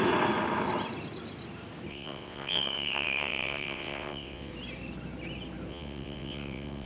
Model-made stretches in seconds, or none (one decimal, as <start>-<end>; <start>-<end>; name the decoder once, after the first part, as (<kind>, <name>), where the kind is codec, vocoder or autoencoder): 1.9-4.5 (vocoder, WaveNeXt); 5.7-6.9